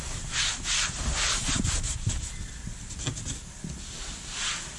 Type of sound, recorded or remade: recorded